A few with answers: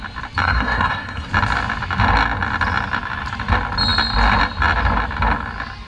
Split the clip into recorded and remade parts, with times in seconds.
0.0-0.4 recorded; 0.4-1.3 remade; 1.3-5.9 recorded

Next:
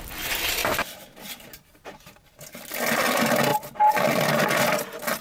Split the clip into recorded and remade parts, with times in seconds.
0.0-0.6 recorded; 0.6-2.3 remade; 2.3-5.2 recorded

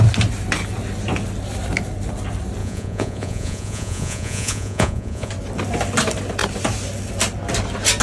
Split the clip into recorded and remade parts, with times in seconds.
0.0-2.6 recorded; 2.6-5.3 remade; 5.3-8.0 recorded

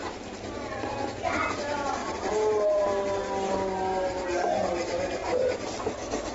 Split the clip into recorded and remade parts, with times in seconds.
0.0-6.3 recorded